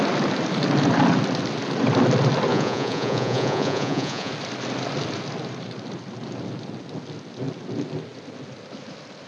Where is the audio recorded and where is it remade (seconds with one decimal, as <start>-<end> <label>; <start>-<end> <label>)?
0.0-2.5 recorded; 2.5-4.3 remade; 4.3-9.3 recorded